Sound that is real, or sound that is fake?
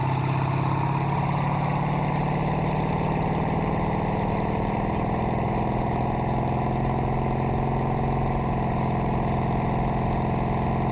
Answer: real